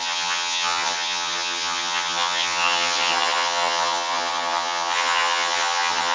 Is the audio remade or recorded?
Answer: remade